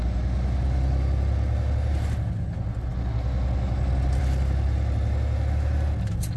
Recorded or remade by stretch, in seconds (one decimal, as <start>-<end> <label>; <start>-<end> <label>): 0.0-6.4 recorded